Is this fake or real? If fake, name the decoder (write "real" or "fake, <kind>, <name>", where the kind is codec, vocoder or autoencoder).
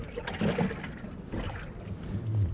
real